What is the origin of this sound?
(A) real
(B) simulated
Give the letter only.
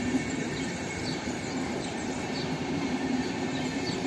B